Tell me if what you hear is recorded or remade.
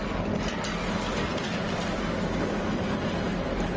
recorded